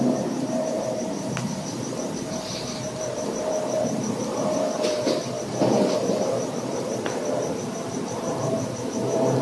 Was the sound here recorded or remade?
remade